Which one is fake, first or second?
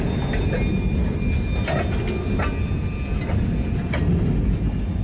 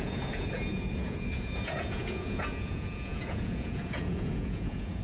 second